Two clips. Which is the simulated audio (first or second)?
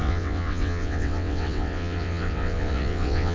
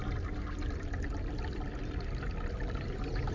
first